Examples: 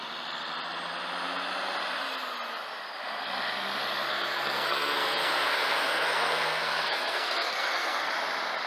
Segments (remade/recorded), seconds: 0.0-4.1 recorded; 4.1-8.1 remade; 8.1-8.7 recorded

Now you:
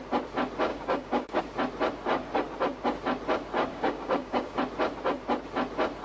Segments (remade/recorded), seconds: 0.0-0.7 recorded; 0.7-1.4 remade; 1.4-3.7 recorded; 3.7-4.6 remade; 4.6-6.0 recorded